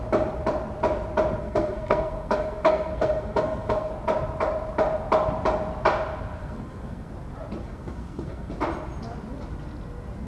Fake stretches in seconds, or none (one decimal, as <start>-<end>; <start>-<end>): 1.4-3.9; 6.4-7.1; 7.6-8.5

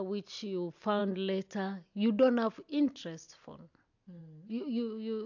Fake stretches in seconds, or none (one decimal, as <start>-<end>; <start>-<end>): none

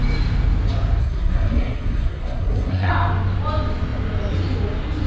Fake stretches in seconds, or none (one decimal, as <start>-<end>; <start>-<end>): 1.0-2.9

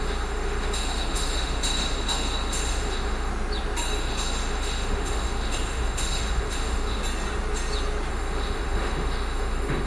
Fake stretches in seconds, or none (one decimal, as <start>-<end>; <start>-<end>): 0.0-3.3; 4.0-7.0; 8.1-9.9

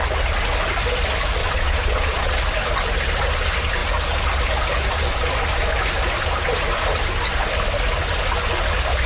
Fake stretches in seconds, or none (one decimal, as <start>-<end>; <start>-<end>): 1.4-2.4